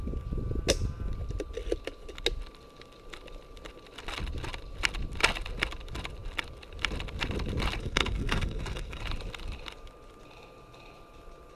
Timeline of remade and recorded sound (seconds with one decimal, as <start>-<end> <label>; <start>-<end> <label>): 0.0-7.8 recorded; 7.8-9.0 remade; 9.0-11.6 recorded